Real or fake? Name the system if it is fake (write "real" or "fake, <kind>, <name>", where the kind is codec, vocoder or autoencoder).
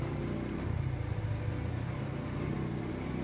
real